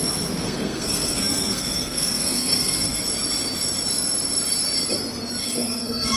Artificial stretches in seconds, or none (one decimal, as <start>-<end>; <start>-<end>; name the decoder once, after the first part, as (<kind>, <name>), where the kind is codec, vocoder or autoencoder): 0.4-3.0 (codec, SNAC); 5.4-6.2